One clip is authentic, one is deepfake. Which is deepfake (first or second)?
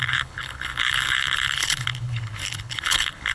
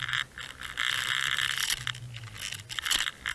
first